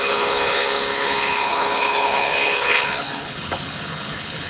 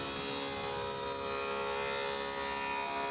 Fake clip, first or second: first